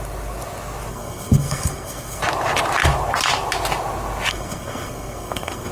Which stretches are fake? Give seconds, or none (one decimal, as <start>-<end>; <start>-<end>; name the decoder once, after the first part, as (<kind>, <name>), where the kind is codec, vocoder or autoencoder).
0.9-2.2 (codec, SNAC); 4.3-5.7